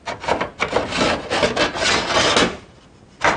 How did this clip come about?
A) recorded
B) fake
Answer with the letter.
A